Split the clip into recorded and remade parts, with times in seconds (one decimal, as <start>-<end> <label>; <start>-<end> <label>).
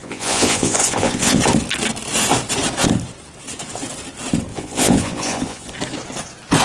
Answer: 0.0-1.4 remade; 1.4-4.5 recorded; 4.5-5.7 remade; 5.7-6.6 recorded